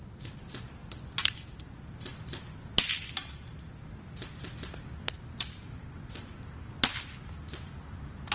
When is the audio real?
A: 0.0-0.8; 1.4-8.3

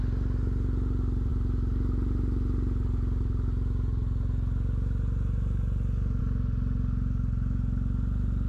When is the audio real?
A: 0.0-8.5

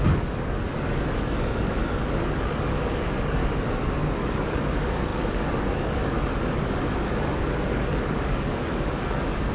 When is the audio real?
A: 3.4-3.9